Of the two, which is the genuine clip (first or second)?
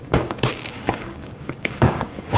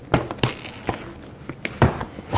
second